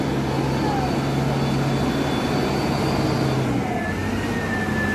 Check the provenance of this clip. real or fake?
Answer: real